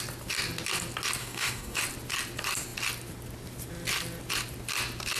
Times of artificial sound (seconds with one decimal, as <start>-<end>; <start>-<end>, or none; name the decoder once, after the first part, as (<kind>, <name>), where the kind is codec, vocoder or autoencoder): 1.2-1.8 (codec, DAC)